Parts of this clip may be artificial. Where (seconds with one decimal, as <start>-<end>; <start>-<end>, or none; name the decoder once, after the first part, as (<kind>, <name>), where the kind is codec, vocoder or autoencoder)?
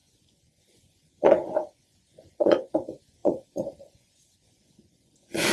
0.0-5.5 (vocoder, Vocos)